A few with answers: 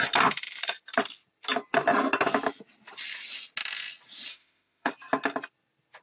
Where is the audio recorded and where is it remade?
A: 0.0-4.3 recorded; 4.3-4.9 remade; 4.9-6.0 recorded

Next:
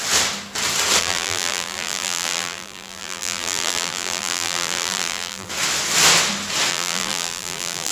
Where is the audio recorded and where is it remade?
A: 0.0-1.0 recorded; 1.0-5.5 remade; 5.5-6.7 recorded; 6.7-7.9 remade

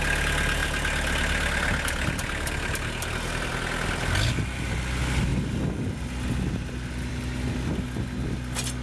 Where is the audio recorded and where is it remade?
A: 0.0-8.8 recorded

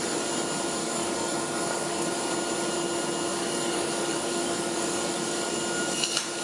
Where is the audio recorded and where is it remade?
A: 0.0-0.8 recorded; 0.8-2.2 remade; 2.2-3.3 recorded; 3.3-5.5 remade; 5.5-6.4 recorded

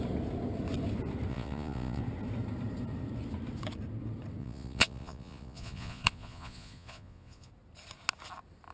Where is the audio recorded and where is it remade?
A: 0.0-1.3 recorded; 1.3-2.0 remade; 2.0-4.4 recorded; 4.4-7.5 remade; 7.5-8.7 recorded

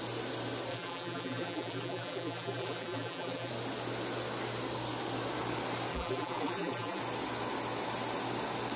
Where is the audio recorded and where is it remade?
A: 0.0-0.7 recorded; 0.7-3.5 remade; 3.5-5.9 recorded; 5.9-7.0 remade; 7.0-8.8 recorded